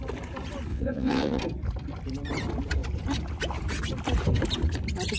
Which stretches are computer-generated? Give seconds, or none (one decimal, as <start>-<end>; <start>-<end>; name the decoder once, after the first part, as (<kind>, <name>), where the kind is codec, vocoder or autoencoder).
0.7-1.4 (vocoder, WaveNeXt)

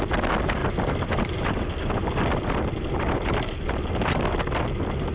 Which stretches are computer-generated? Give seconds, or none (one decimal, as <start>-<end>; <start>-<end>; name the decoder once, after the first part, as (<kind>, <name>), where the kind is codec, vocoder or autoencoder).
none

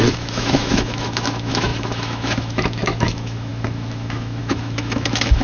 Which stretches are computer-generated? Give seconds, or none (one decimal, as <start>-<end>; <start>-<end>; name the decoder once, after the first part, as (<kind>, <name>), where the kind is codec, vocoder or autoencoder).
0.0-5.4 (autoencoder, DAC-VAE)